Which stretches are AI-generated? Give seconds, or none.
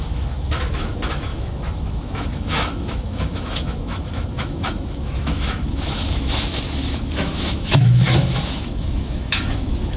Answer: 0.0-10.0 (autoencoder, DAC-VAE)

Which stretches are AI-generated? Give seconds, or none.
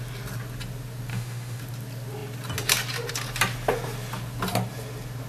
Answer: 1.1-1.6 (autoencoder, DAC-VAE)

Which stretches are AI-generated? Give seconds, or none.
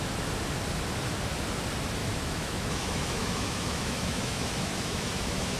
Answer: 2.0-5.6 (autoencoder, DAC-VAE)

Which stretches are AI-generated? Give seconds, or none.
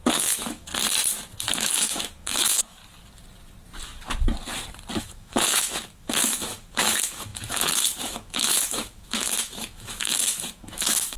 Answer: 0.0-0.7 (autoencoder, DAC-VAE); 1.5-2.8; 5.0-11.2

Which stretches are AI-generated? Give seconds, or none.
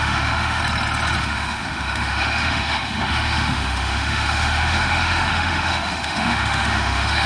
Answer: 0.0-0.6 (autoencoder, DAC-VAE); 1.2-7.3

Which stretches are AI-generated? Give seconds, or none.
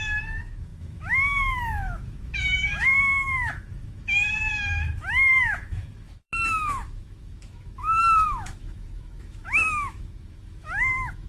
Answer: 0.0-11.3 (autoencoder, DAC-VAE)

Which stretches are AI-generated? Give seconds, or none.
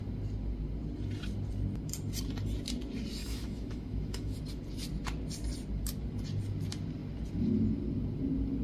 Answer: 3.2-4.4 (autoencoder, DAC-VAE)